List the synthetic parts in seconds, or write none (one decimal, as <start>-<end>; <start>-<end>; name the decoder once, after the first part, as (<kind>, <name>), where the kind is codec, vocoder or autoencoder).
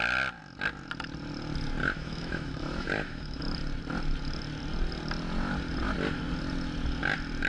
1.8-3.4 (autoencoder, DAC-VAE)